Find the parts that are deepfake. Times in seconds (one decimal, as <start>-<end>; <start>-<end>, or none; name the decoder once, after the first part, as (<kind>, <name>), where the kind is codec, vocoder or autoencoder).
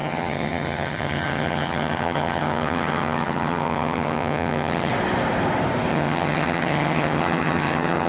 0.0-4.9 (vocoder, HiFi-GAN); 5.9-8.1